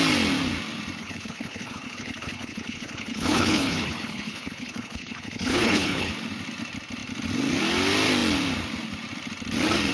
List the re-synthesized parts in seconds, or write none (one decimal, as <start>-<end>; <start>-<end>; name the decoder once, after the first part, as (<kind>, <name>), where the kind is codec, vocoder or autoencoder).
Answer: 1.0-6.1 (codec, HILCodec)